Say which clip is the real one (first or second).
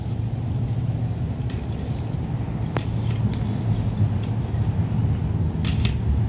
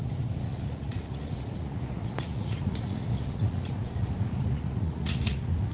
first